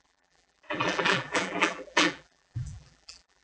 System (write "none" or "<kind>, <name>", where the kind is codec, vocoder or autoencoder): vocoder, BigVGAN v2